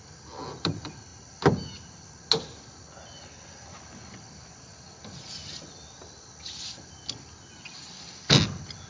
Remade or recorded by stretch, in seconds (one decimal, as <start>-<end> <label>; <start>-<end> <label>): 0.0-8.9 recorded